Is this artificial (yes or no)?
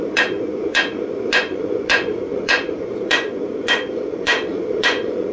yes